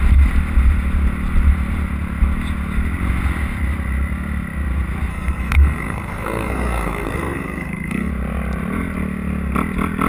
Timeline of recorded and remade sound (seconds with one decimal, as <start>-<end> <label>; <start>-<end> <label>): 0.0-5.1 recorded; 5.1-8.1 remade; 8.1-10.1 recorded